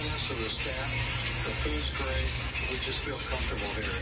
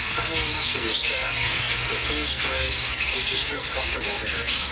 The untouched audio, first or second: first